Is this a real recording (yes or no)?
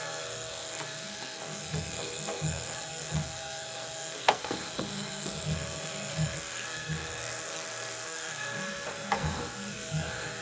no